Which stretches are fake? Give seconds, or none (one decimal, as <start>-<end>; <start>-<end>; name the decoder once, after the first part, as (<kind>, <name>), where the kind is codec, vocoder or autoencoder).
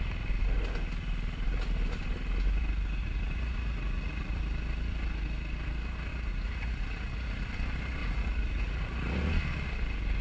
3.0-4.4 (vocoder, Vocos); 6.1-7.5; 8.0-9.3